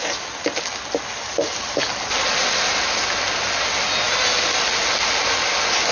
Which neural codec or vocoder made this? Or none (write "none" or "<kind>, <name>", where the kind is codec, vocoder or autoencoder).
none